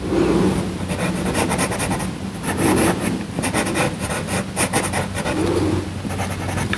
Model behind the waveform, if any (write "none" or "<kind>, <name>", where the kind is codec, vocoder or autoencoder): none